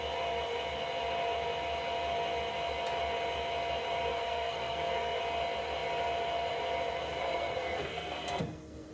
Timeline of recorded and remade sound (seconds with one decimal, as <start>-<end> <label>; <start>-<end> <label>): 0.0-4.1 recorded; 4.1-5.2 remade; 5.2-7.2 recorded; 7.2-8.9 remade